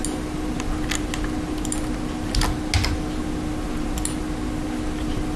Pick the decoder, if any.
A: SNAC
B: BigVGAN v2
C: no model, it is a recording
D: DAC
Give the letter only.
C